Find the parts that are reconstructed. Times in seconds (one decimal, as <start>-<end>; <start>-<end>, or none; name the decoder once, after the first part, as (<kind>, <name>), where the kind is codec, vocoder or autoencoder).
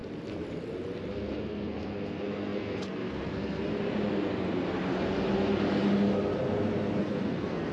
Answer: 1.1-3.7 (codec, SNAC); 7.0-7.7